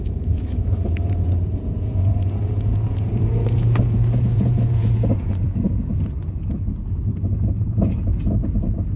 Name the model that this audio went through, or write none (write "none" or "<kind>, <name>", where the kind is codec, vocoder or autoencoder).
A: vocoder, Vocos